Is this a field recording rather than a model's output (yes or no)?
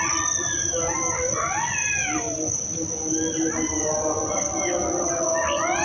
yes